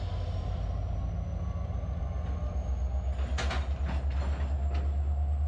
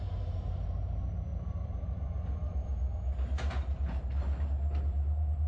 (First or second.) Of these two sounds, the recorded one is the first